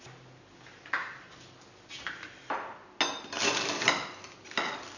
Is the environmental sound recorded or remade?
recorded